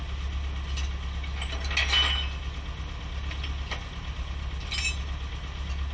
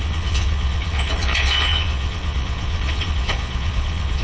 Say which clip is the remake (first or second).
second